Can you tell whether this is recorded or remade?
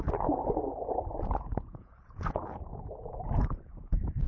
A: remade